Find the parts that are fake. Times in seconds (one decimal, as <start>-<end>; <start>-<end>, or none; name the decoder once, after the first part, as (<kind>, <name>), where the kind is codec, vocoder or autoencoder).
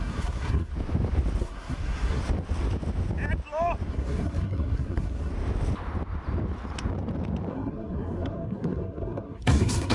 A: 0.0-0.7 (codec, SNAC); 1.4-2.2; 3.9-5.3; 7.5-9.9